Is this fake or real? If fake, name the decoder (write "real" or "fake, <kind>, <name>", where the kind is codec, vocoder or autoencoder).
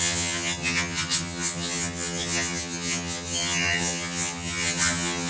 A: fake, vocoder, HiFi-GAN